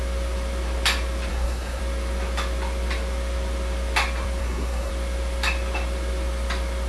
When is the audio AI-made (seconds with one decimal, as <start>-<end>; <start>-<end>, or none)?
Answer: 1.3-1.8; 4.4-4.9